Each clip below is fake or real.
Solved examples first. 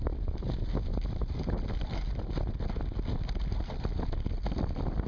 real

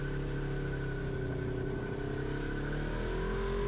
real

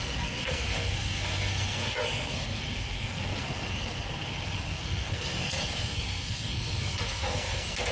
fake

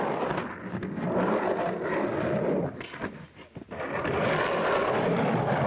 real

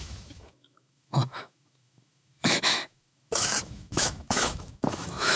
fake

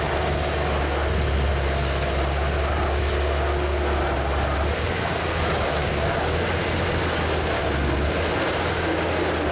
real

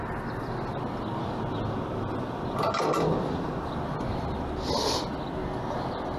real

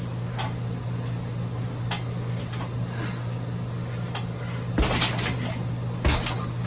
real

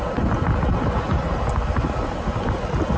real